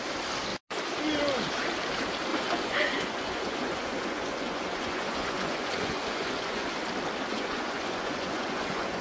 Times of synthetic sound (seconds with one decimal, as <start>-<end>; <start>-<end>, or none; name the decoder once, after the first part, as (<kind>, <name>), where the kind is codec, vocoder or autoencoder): 2.3-6.7 (vocoder, Vocos); 7.3-9.0